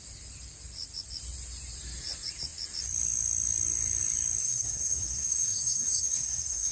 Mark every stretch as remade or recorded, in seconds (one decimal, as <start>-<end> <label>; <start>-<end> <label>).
0.0-4.4 recorded; 4.4-6.7 remade